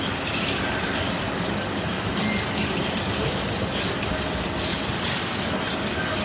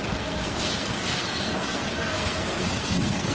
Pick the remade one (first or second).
second